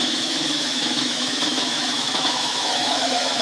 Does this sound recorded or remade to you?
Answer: remade